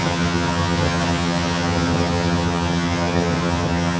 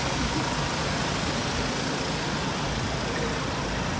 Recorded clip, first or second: second